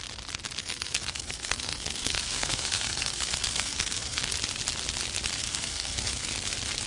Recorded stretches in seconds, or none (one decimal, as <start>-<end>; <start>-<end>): 0.0-0.6; 4.2-5.4; 6.3-6.9